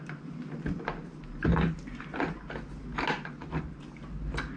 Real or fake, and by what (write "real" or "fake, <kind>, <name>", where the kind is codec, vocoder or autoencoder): real